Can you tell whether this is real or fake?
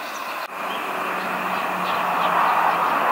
real